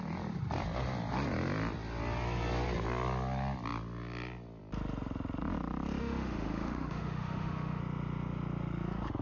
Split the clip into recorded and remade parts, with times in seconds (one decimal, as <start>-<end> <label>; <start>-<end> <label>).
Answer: 0.0-6.0 recorded; 6.0-7.8 remade; 7.8-9.2 recorded